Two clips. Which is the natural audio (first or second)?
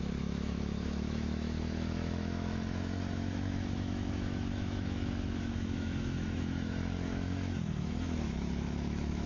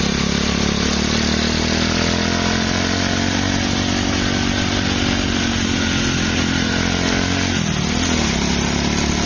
second